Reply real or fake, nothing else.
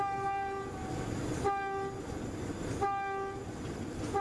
real